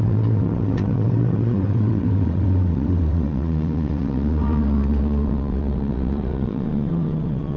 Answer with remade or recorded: remade